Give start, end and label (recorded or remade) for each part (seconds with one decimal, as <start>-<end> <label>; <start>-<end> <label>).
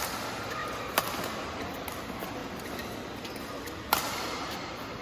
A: 0.0-0.6 remade; 0.6-1.1 recorded; 1.1-2.4 remade; 2.4-3.7 recorded; 3.7-5.0 remade